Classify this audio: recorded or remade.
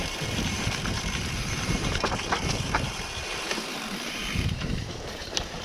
remade